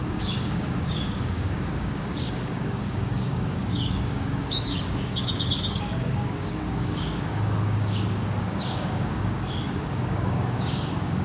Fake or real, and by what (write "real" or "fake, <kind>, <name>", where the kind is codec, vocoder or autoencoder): fake, codec, DAC